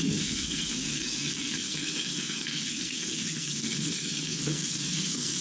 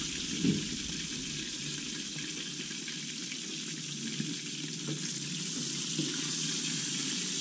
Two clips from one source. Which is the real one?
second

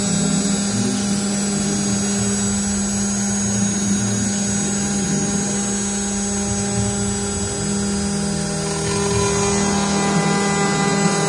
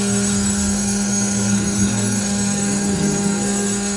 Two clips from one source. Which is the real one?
first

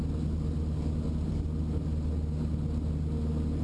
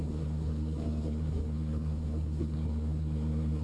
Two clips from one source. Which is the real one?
first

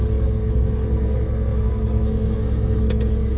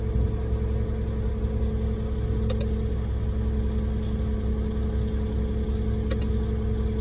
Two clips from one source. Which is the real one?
second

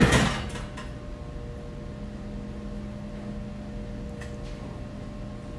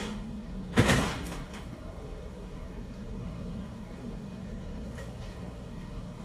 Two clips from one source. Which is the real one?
first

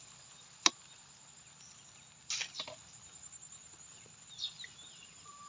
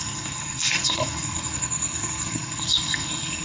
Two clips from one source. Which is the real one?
first